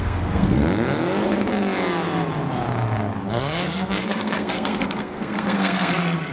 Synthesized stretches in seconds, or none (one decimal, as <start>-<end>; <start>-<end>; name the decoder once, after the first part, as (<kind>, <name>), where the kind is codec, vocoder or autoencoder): 0.0-0.6 (codec, SNAC); 3.3-6.3